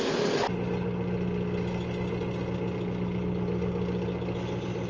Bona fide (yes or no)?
yes